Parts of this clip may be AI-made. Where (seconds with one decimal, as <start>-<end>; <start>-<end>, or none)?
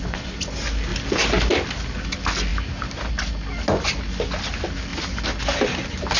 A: none